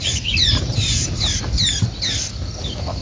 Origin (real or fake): real